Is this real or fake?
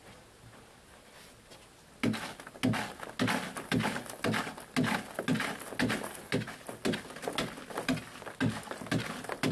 real